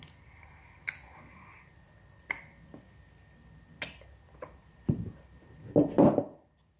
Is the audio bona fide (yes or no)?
yes